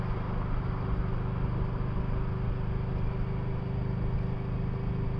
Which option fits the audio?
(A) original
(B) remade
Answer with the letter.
A